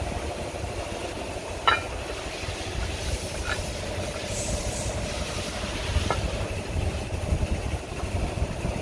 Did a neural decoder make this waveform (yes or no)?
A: no